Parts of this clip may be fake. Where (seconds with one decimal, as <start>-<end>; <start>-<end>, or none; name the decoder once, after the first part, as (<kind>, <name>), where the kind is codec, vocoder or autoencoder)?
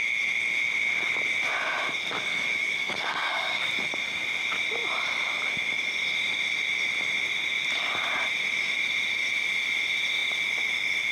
2.3-3.7 (codec, DAC)